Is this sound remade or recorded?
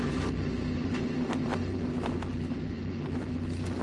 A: recorded